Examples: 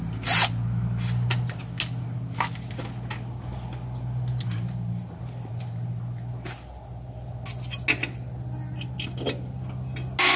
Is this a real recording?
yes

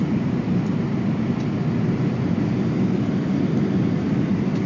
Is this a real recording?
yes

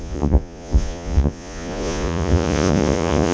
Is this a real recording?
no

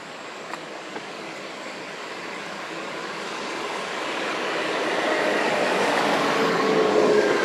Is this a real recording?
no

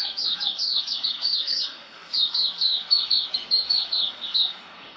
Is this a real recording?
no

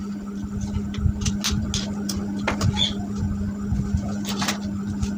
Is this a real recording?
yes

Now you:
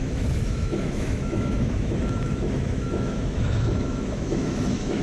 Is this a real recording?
no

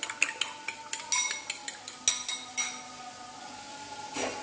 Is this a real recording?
yes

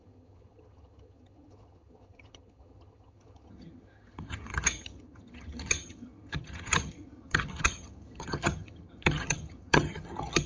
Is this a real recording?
no